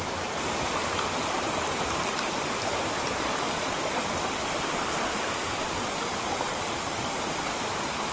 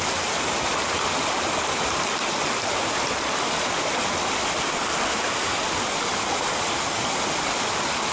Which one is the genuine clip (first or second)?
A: second